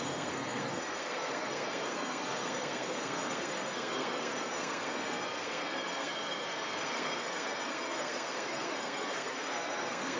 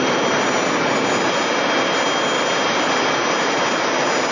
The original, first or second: second